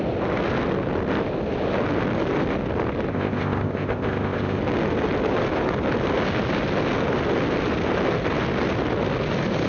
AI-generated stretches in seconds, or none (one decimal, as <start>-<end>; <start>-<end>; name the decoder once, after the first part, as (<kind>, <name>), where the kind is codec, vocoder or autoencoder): 3.1-4.6 (codec, ZipCodec)